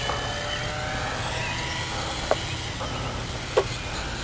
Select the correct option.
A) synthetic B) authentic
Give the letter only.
B